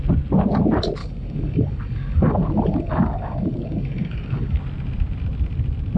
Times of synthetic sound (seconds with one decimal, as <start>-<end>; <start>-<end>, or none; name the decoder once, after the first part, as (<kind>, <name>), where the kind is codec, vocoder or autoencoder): 1.0-4.6 (codec, DAC)